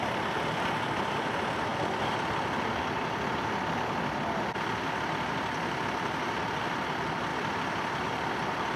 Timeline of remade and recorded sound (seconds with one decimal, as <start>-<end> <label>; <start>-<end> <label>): 0.0-8.8 recorded